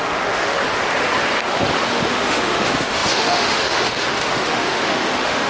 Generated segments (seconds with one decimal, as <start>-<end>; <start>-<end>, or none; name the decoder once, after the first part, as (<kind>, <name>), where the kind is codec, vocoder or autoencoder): 0.0-0.6 (autoencoder, DAC-VAE); 1.9-5.5